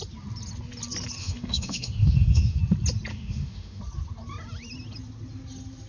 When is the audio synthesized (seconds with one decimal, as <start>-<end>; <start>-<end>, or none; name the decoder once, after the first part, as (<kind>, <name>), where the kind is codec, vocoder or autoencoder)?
1.2-2.6 (autoencoder, DAC-VAE); 3.1-3.8